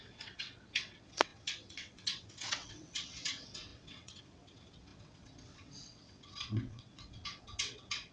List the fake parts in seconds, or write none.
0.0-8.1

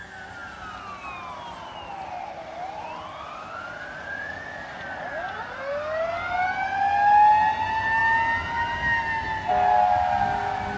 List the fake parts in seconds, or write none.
none